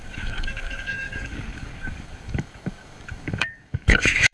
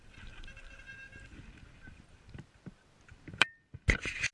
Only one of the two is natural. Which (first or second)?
second